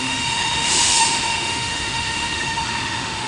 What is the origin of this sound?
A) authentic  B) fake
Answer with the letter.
B